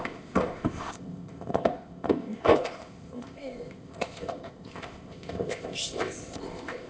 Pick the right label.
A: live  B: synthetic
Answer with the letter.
B